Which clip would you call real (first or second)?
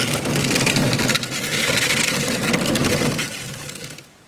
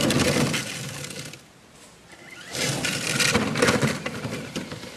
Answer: first